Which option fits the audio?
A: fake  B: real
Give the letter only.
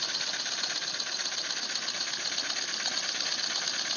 B